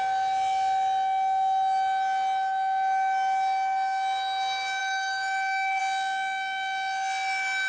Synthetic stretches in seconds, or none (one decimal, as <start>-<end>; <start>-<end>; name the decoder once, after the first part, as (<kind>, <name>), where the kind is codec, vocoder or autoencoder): 4.8-5.8 (autoencoder, DAC-VAE)